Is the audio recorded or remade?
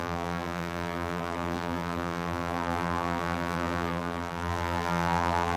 remade